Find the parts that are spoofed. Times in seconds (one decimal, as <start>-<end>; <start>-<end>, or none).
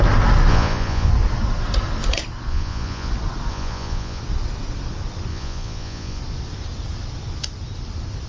0.5-1.1; 2.5-3.1; 3.5-4.2; 5.3-6.2